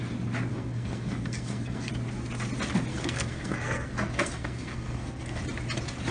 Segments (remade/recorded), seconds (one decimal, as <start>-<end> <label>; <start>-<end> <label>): 0.0-0.5 recorded; 0.5-1.9 remade; 1.9-2.9 recorded; 2.9-5.4 remade; 5.4-6.1 recorded